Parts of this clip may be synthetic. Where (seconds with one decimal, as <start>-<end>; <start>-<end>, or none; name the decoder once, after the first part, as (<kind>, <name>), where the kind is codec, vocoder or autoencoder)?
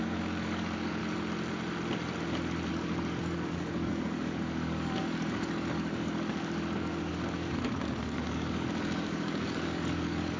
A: 0.0-1.0 (codec, DAC); 2.7-10.4